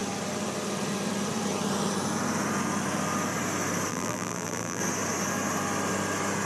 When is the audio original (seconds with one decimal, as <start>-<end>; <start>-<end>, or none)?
0.0-3.9; 4.8-6.5